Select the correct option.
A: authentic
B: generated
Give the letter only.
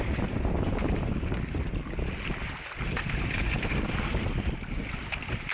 A